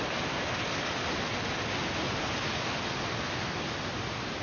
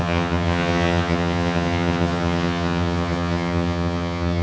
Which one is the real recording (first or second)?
first